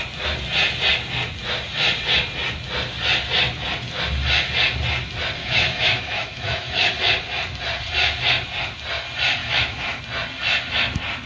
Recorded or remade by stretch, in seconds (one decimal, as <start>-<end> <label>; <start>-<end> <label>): 0.0-5.4 recorded; 5.4-6.9 remade; 6.9-9.4 recorded; 9.4-10.0 remade; 10.0-11.3 recorded